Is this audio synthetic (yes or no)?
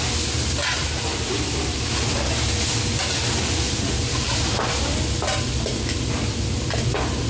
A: no